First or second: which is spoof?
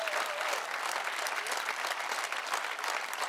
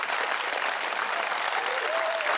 second